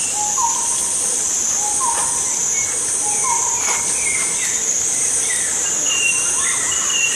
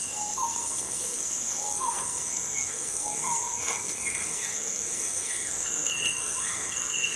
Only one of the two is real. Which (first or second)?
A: first